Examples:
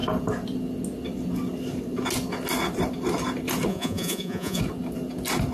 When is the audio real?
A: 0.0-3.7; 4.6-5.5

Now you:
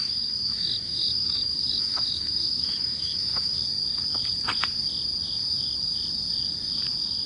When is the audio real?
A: 3.6-7.3

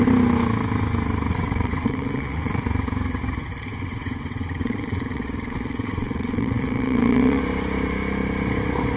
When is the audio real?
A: 0.0-1.3; 2.6-3.7; 7.4-9.0

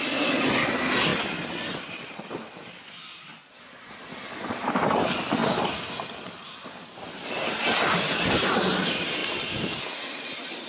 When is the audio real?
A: 0.0-9.2; 9.8-10.7

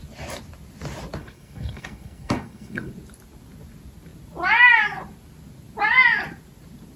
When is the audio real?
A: 0.0-1.2; 2.9-7.0

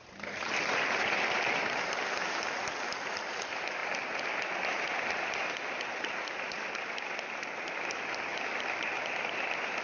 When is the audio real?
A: 0.0-9.8